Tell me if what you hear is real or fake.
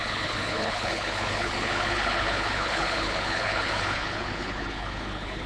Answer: fake